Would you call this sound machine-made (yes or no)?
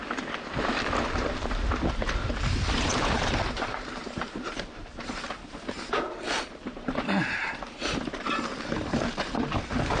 yes